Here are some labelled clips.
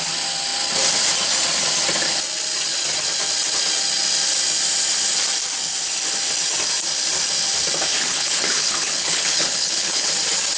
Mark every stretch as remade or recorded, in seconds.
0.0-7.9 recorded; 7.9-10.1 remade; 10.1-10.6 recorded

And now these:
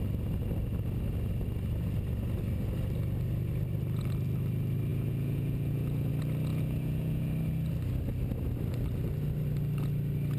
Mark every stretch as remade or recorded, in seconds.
0.0-4.9 recorded; 4.9-6.1 remade; 6.1-6.5 recorded; 6.5-7.3 remade; 7.3-10.4 recorded